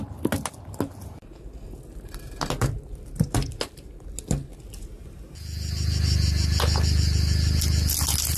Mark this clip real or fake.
real